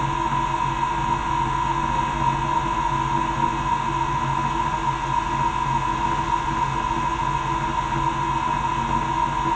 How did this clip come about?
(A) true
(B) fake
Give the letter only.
A